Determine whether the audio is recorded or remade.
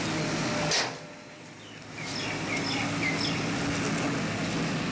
recorded